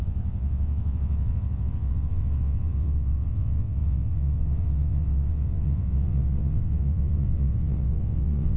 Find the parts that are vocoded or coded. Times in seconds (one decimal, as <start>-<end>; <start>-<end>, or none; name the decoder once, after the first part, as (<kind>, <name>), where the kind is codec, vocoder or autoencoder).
0.0-8.6 (vocoder, WaveNeXt)